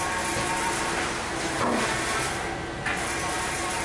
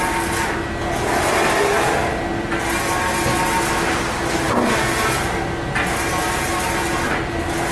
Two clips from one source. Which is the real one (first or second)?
second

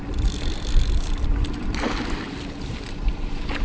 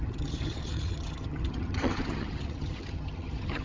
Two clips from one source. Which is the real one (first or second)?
first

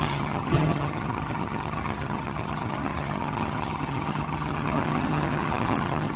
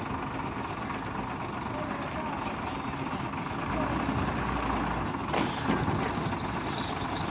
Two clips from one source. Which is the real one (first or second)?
second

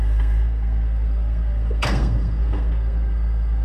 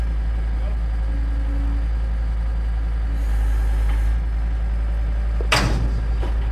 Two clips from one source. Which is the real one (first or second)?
second